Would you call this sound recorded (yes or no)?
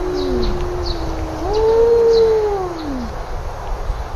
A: yes